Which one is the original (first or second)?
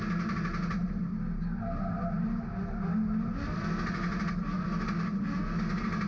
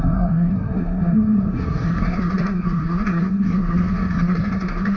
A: first